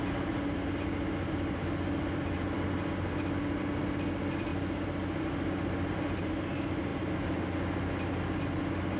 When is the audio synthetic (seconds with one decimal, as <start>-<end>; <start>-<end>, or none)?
none